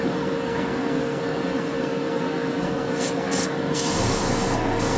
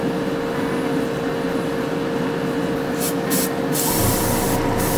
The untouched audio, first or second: second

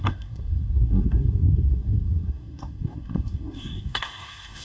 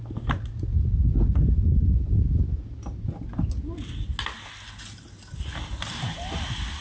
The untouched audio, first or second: second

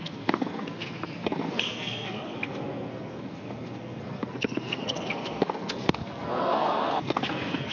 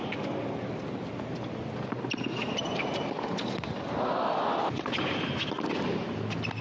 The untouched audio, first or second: second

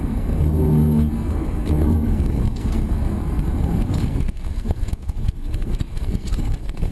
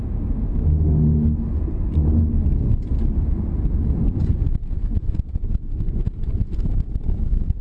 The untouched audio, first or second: second